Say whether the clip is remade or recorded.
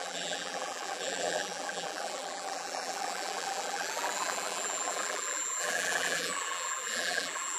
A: remade